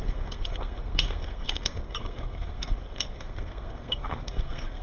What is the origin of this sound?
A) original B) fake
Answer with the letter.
B